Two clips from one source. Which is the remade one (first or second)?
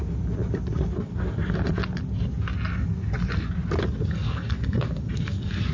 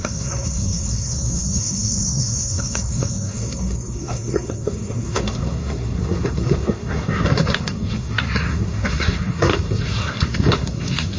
second